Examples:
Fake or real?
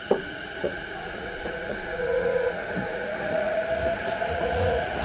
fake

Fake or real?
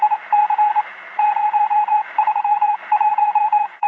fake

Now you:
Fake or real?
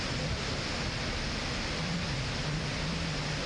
real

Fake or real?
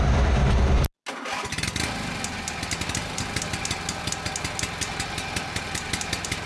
real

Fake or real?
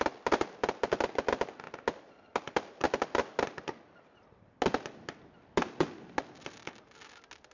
real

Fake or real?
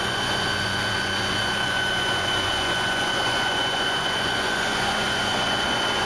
fake